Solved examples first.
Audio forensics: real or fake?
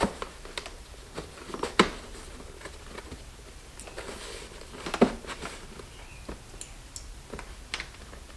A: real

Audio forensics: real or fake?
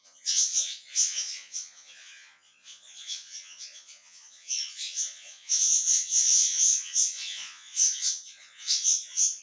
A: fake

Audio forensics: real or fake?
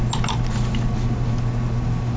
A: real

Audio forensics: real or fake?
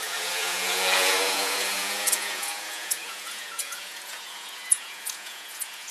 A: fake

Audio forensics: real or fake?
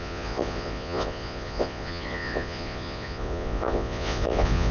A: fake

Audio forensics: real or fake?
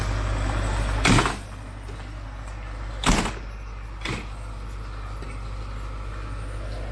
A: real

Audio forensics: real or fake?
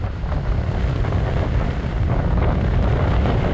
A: real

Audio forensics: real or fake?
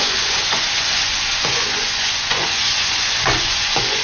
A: fake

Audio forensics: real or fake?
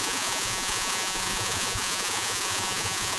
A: fake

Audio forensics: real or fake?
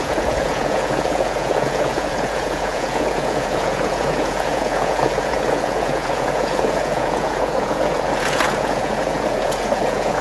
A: fake